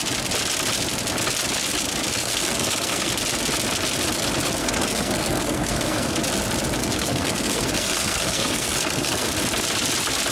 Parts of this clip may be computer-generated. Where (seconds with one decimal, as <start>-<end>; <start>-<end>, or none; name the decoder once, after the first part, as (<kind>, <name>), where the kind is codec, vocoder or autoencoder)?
2.1-3.2 (codec, SNAC); 4.6-6.2; 6.8-9.3